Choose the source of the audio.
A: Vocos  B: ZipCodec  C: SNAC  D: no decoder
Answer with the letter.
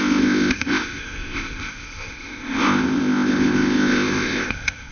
B